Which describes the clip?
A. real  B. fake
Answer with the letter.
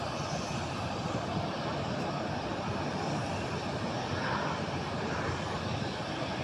A